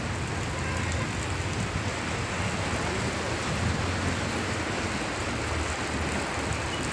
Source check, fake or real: real